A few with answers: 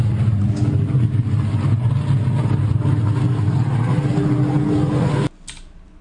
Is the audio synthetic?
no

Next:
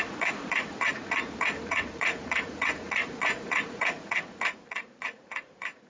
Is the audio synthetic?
yes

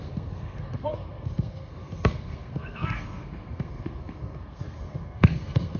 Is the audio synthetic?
yes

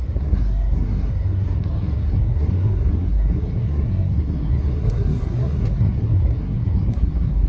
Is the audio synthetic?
yes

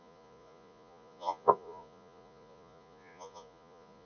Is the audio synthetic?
yes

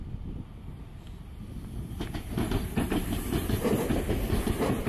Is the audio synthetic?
no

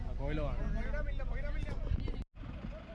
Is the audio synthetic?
no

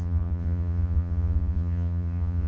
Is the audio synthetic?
yes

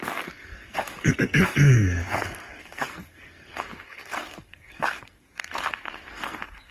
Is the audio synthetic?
yes